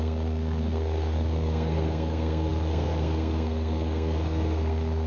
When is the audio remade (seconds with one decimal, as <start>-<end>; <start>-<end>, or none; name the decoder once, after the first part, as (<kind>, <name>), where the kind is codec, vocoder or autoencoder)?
0.0-5.1 (codec, SNAC)

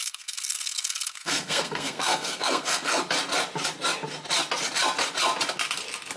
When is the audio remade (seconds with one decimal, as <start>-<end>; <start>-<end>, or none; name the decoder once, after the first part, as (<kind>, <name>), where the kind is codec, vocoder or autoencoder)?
0.0-3.0 (codec, SNAC)

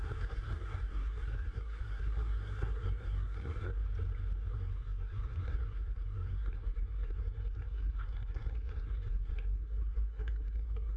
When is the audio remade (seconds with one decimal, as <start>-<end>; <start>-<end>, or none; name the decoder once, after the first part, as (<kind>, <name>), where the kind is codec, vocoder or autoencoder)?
0.0-3.8 (codec, SNAC); 4.5-11.0

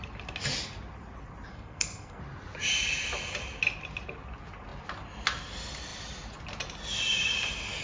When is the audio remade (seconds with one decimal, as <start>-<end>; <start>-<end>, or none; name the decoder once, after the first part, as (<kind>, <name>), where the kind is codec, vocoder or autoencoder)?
1.5-2.2 (codec, SNAC)

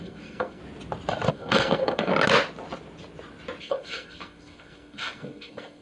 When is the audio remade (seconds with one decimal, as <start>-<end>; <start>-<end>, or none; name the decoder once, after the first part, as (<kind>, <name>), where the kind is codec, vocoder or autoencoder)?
0.0-0.6 (codec, SNAC); 1.3-2.1; 3.6-5.8

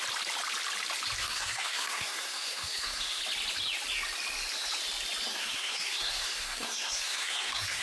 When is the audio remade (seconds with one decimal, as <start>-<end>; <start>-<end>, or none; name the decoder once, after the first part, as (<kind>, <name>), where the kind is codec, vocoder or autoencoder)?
1.2-3.2 (codec, SNAC); 5.3-7.8

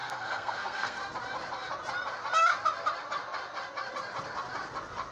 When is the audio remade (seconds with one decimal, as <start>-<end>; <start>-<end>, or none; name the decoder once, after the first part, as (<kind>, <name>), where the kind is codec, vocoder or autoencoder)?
0.0-1.0 (codec, SNAC)

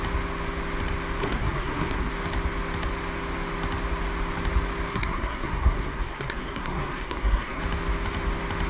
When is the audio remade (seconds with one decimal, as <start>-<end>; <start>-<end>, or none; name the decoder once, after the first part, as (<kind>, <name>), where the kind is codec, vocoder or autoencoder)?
1.2-2.1 (codec, SNAC); 4.9-7.6